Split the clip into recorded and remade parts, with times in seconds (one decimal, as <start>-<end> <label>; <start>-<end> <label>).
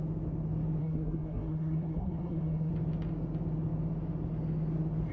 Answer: 0.0-0.8 recorded; 0.8-2.7 remade; 2.7-5.1 recorded